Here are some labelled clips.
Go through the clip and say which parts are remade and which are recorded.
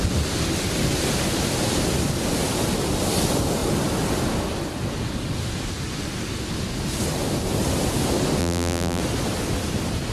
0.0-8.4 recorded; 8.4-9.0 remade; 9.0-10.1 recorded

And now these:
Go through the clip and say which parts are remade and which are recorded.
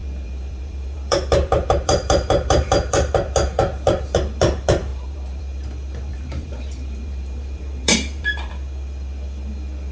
0.0-3.1 remade; 3.1-4.9 recorded; 4.9-5.4 remade; 5.4-6.1 recorded; 6.1-8.5 remade; 8.5-9.9 recorded